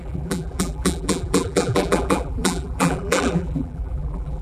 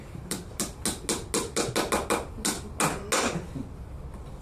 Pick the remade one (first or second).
first